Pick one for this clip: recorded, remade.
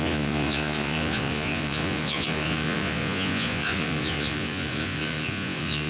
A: remade